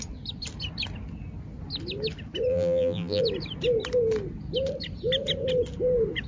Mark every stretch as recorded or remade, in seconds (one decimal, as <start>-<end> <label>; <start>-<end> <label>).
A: 0.0-2.5 recorded; 2.5-3.2 remade; 3.2-6.3 recorded